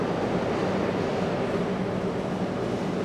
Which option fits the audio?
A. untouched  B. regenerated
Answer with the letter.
A